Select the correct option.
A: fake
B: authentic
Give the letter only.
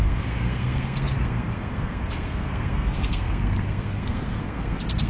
A